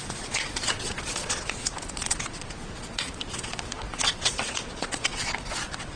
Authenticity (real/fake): fake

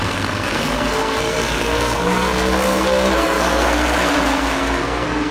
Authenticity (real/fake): fake